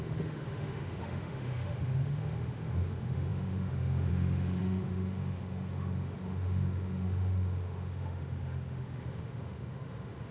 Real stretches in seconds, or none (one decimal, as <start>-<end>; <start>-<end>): none